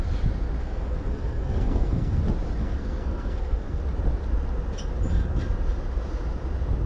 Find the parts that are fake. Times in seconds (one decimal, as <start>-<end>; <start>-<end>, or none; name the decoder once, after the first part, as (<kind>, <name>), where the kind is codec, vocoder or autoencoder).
0.6-2.2 (codec, SNAC); 2.6-3.8